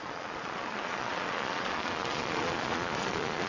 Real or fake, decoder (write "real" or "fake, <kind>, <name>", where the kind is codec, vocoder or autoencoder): fake, vocoder, Vocos